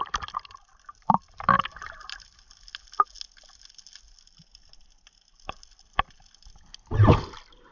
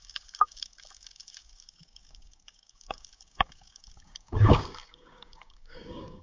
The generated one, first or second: second